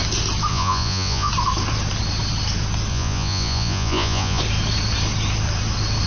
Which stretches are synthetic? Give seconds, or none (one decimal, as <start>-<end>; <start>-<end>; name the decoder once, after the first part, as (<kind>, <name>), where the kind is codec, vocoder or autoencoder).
0.5-1.3 (vocoder, Vocos); 2.9-4.4